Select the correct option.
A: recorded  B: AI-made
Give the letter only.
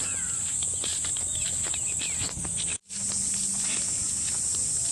A